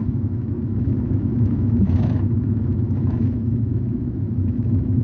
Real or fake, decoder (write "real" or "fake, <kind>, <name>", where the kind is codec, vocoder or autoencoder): fake, autoencoder, DAC-VAE